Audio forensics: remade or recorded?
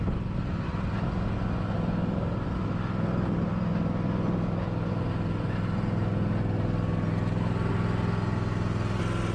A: recorded